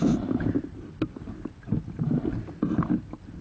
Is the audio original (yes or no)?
yes